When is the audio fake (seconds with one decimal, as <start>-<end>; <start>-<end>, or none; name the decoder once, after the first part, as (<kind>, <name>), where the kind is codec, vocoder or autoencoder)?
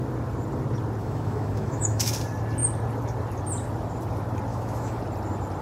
1.0-2.1 (autoencoder, DAC-VAE); 4.5-5.0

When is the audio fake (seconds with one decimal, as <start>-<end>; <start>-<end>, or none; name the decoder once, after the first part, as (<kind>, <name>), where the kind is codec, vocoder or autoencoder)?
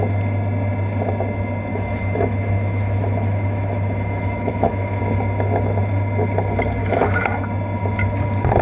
1.7-5.0 (autoencoder, DAC-VAE); 6.8-7.4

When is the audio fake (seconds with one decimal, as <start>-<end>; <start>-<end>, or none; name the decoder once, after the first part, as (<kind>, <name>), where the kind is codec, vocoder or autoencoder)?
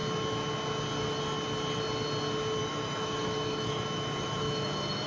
2.6-5.1 (autoencoder, DAC-VAE)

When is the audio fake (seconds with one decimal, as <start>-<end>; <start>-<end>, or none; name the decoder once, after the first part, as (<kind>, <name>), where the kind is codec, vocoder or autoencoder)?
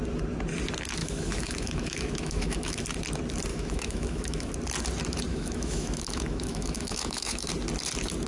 1.0-2.8 (autoencoder, DAC-VAE); 3.5-4.5; 5.3-7.5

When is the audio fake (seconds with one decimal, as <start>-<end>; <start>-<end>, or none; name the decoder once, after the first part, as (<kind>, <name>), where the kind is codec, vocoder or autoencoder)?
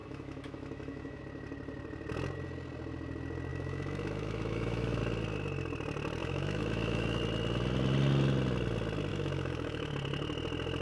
0.0-1.2 (autoencoder, DAC-VAE); 3.5-5.0; 6.2-7.2; 9.1-9.9